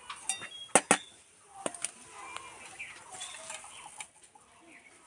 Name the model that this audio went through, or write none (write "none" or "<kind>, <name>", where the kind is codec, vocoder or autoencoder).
none